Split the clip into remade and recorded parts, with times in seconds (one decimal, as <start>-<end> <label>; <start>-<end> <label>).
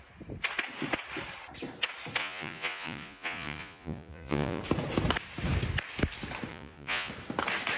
0.0-2.2 recorded; 2.2-4.6 remade; 4.6-6.5 recorded; 6.5-7.1 remade; 7.1-7.8 recorded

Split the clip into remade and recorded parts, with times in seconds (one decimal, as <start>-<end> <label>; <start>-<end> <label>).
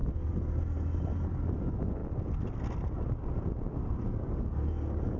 0.0-1.6 recorded; 1.6-2.0 remade; 2.0-5.2 recorded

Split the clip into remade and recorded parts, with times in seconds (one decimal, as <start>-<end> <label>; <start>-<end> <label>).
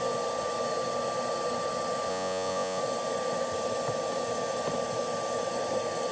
0.0-2.1 recorded; 2.1-2.8 remade; 2.8-6.1 recorded